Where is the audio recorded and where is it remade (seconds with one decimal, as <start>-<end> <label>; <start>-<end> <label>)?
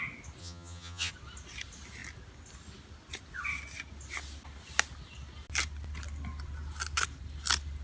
0.0-0.4 recorded; 0.4-1.1 remade; 1.1-7.8 recorded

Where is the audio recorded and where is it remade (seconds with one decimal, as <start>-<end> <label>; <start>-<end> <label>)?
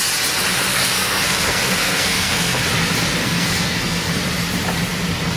0.0-0.7 recorded; 0.7-2.6 remade; 2.6-3.2 recorded; 3.2-4.1 remade; 4.1-5.4 recorded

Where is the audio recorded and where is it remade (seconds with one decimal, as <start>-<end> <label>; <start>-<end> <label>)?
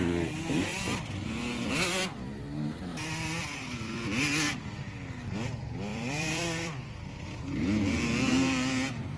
0.0-0.7 recorded; 0.7-1.7 remade; 1.7-2.9 recorded; 2.9-4.0 remade; 4.0-5.9 recorded; 5.9-7.4 remade; 7.4-9.2 recorded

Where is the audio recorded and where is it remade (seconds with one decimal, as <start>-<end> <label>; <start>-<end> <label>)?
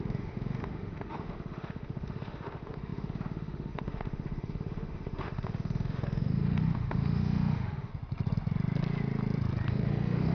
0.0-7.9 remade; 7.9-9.7 recorded; 9.7-10.3 remade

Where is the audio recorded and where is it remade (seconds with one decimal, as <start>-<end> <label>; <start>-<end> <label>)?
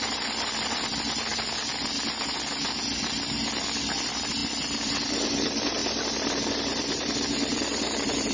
0.0-1.3 remade; 1.3-3.0 recorded; 3.0-5.8 remade; 5.8-6.9 recorded; 6.9-8.3 remade